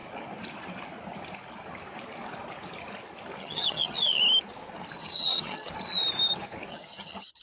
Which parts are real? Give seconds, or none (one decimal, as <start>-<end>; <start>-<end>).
0.0-3.4; 4.2-5.0; 5.7-6.7